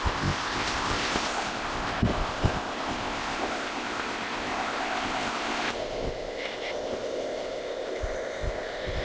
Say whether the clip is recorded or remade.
remade